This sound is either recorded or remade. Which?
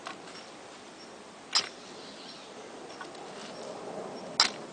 recorded